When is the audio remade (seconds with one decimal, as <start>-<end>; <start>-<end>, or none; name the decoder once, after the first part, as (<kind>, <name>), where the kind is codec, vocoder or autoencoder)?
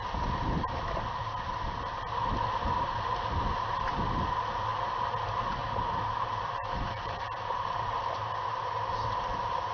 none